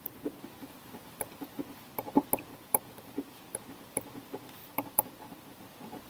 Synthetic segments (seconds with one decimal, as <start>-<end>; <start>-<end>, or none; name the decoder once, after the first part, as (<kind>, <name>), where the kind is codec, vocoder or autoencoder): 0.6-1.6 (vocoder, BigVGAN v2); 2.5-3.3; 4.6-5.6